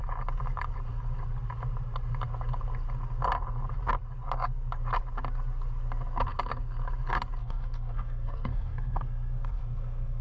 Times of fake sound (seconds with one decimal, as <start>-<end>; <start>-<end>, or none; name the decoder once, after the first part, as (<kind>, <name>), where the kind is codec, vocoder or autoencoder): 7.4-10.2 (codec, SNAC)

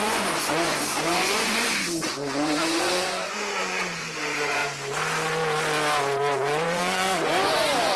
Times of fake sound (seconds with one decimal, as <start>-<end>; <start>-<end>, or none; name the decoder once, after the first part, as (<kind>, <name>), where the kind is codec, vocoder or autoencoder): 0.0-4.6 (vocoder, Vocos); 6.0-8.0

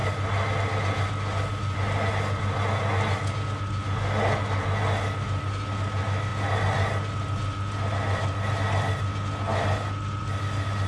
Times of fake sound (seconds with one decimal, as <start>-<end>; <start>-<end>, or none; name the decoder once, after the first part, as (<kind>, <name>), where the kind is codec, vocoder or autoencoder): none

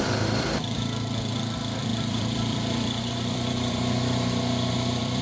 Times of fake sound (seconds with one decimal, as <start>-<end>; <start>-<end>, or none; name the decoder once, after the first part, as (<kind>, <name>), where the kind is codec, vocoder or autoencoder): 0.0-5.2 (vocoder, BigVGAN v2)

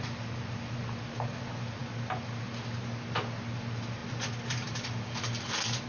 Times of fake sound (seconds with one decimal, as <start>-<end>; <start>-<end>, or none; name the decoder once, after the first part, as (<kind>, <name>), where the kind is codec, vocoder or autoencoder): 4.0-5.9 (vocoder, BigVGAN v2)